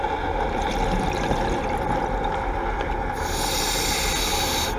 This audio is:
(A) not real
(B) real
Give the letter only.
B